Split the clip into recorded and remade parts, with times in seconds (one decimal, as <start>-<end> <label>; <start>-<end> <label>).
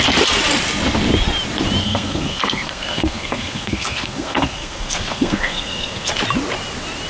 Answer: 0.0-1.8 recorded; 1.8-6.1 remade; 6.1-7.1 recorded